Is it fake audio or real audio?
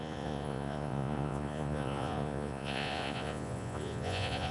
fake